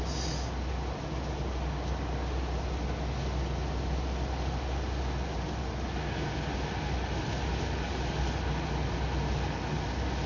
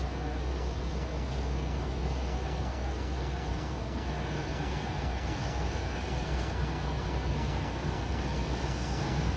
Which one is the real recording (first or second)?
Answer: first